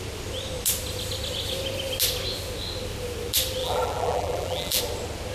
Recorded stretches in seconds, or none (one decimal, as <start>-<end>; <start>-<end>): 0.0-3.6; 4.8-5.3